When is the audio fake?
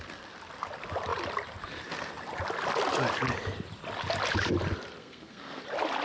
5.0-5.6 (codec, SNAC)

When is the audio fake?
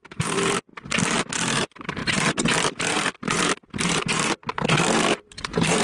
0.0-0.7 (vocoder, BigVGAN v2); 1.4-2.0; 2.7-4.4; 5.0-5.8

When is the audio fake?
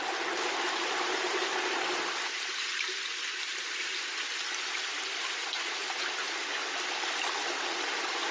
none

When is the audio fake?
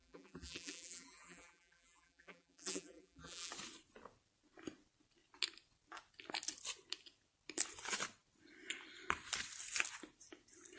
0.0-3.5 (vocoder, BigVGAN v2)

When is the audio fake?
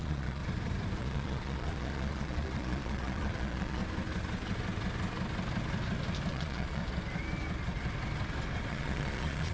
0.0-0.4 (vocoder, Vocos); 1.0-3.8; 6.3-6.8; 8.7-9.5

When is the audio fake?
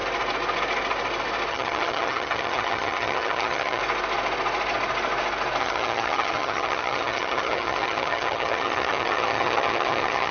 1.5-3.8 (vocoder, HiFi-GAN); 5.6-10.3